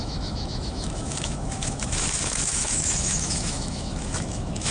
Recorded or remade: remade